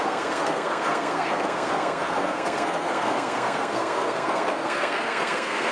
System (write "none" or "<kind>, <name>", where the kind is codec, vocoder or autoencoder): codec, SNAC